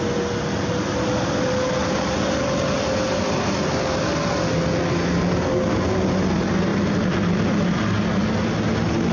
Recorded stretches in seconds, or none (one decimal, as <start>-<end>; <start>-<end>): 0.0-9.1